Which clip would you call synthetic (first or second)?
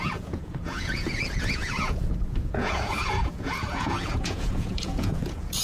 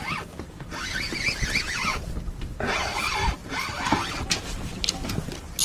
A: first